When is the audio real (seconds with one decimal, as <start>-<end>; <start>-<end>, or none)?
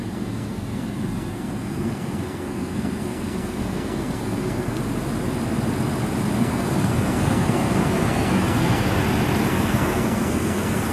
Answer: 4.8-6.4; 8.9-9.5